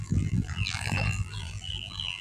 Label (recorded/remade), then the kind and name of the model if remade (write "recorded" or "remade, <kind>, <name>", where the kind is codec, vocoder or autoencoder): remade, vocoder, BigVGAN v2